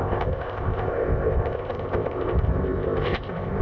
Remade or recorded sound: remade